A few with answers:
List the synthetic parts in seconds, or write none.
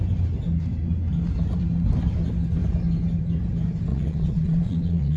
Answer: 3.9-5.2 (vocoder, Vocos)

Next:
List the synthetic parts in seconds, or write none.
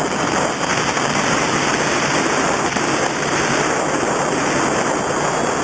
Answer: none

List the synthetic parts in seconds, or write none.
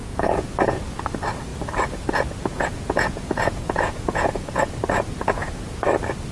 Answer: 0.0-0.5 (vocoder, Vocos); 2.5-4.6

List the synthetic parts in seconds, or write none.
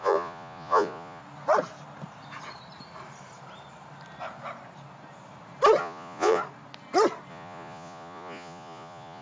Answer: 0.0-1.2 (vocoder, Vocos); 5.8-6.4; 7.3-9.2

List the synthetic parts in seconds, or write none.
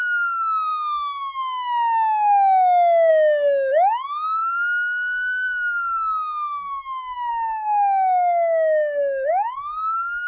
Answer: none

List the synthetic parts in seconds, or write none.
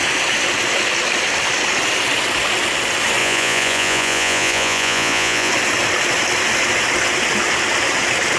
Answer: 3.2-5.5 (vocoder, Vocos)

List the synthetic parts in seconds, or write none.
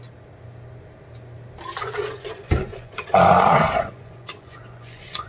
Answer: 1.7-5.3 (vocoder, Vocos)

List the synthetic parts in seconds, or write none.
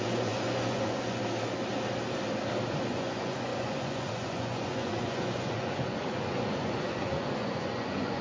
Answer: 0.0-1.2 (vocoder, Vocos); 2.9-8.2